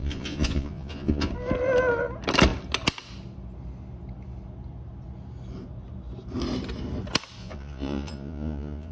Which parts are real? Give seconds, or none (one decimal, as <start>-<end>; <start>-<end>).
1.3-7.4